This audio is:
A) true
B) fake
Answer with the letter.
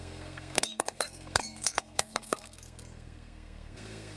B